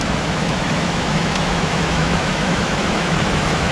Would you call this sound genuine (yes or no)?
no